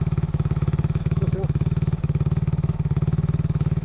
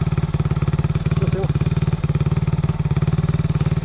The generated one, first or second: first